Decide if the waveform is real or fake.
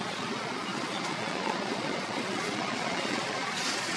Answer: fake